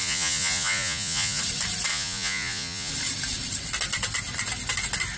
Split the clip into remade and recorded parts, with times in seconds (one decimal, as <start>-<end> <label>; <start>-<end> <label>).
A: 0.0-1.4 remade; 1.4-1.9 recorded; 1.9-2.9 remade; 2.9-5.2 recorded